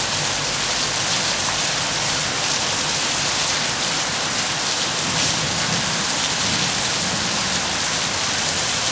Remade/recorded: recorded